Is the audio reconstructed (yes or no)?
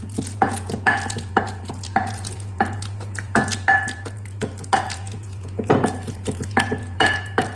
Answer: yes